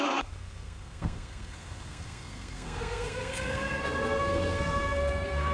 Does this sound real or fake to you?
fake